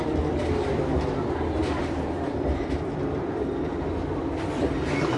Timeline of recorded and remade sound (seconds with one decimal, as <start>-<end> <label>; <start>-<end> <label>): 0.0-5.2 remade